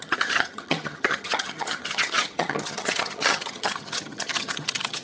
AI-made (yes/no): yes